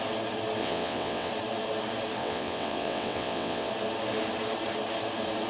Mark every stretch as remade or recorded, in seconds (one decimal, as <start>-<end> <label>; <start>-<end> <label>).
0.0-0.6 recorded; 0.6-1.3 remade; 1.3-2.2 recorded; 2.2-3.7 remade; 3.7-5.5 recorded